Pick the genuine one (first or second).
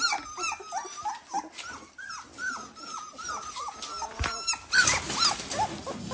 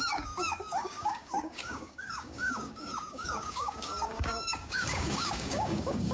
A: first